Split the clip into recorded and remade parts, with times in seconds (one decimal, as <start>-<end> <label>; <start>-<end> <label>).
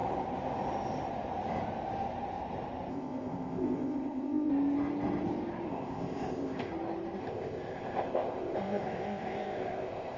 0.0-2.9 recorded; 2.9-4.5 remade; 4.5-5.7 recorded; 5.7-6.7 remade; 6.7-7.2 recorded; 7.2-10.2 remade